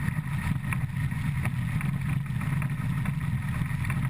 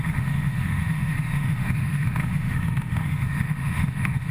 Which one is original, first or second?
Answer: first